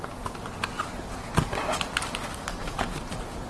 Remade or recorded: recorded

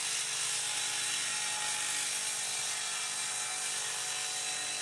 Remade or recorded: recorded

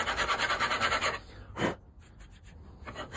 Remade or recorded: recorded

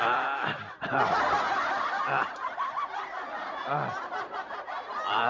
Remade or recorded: recorded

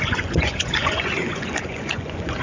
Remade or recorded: remade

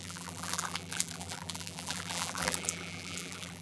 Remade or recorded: remade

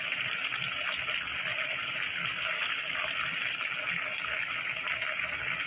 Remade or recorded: recorded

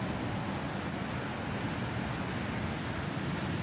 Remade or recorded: recorded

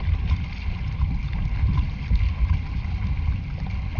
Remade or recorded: recorded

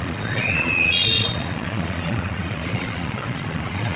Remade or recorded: remade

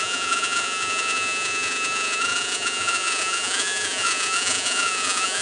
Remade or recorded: remade